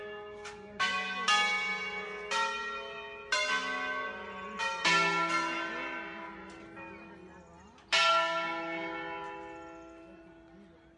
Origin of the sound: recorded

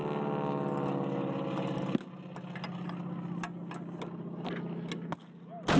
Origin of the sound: recorded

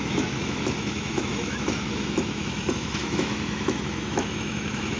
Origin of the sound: remade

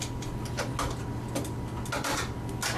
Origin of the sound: recorded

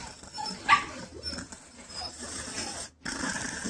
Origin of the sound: recorded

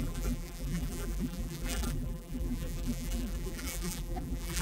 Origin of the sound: remade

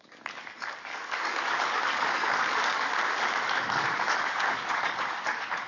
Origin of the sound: remade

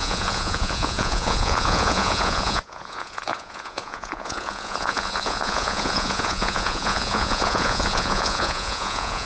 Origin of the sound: remade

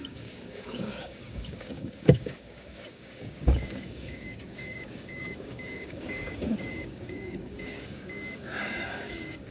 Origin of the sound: remade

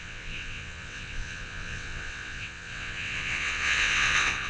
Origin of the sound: remade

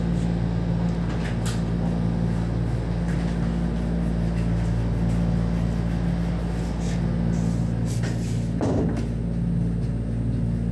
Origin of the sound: recorded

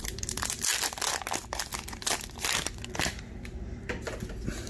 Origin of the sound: recorded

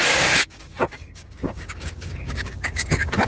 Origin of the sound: remade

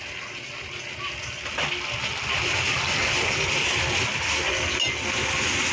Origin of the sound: recorded